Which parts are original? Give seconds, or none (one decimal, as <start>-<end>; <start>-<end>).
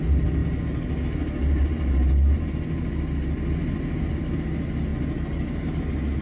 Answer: 0.0-6.2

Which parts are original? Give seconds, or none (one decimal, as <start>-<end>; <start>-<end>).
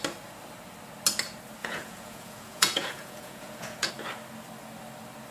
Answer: 0.0-1.6; 3.9-5.3